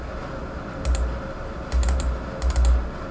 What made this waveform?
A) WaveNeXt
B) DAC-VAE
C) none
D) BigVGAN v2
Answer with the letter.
C